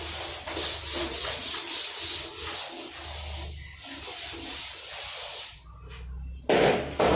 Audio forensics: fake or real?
real